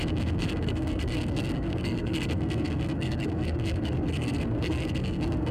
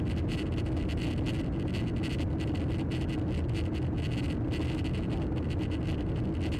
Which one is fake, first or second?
first